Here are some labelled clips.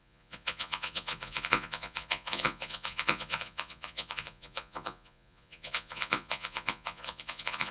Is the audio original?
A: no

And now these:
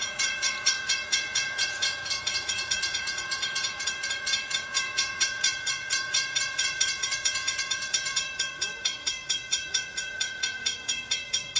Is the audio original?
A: no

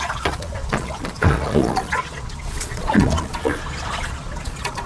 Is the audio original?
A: no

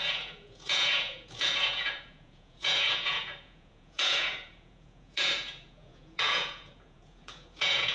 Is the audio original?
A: no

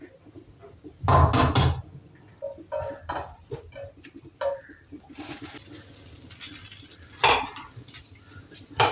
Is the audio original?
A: yes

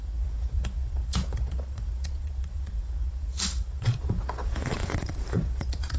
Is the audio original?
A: no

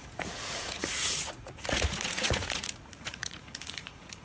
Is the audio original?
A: no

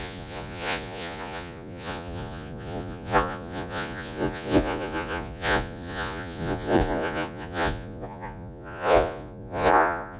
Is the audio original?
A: no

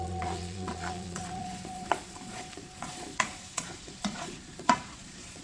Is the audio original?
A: no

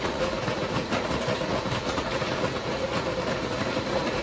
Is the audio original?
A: no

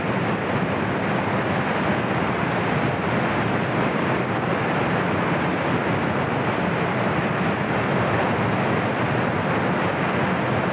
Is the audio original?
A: yes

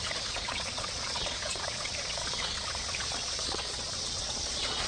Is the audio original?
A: no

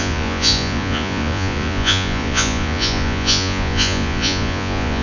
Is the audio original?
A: no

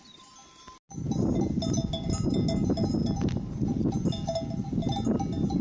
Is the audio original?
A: yes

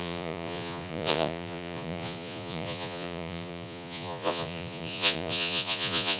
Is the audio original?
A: no